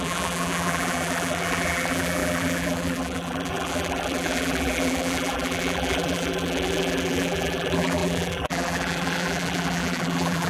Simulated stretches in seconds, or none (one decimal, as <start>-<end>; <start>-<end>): 0.0-10.5